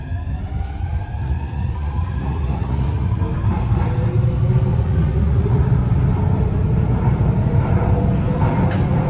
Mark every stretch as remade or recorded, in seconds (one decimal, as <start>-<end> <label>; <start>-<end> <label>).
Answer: 0.0-1.2 recorded; 1.2-3.2 remade; 3.2-4.7 recorded; 4.7-5.6 remade; 5.6-9.1 recorded